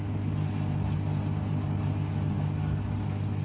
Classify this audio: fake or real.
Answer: real